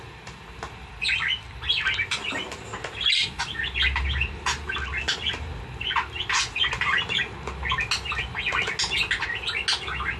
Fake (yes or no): no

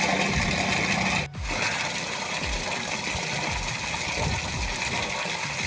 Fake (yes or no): no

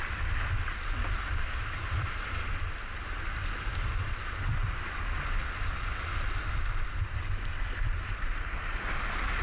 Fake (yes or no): no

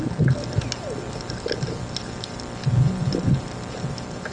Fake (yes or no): no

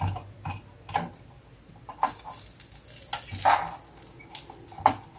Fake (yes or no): no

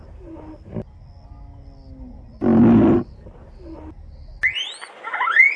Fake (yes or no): no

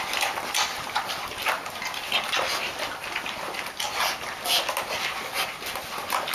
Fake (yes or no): no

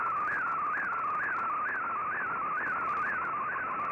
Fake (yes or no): no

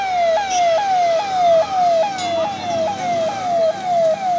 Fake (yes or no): no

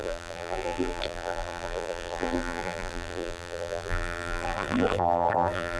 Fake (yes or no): yes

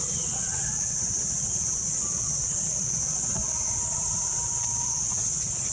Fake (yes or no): yes